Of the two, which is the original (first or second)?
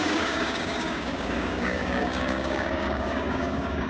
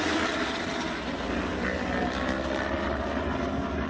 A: second